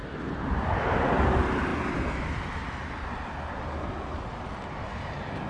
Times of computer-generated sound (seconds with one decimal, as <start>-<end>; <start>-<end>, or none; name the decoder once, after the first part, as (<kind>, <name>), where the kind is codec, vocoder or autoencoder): none